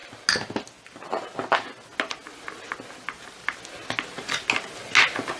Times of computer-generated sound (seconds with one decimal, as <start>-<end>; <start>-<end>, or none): none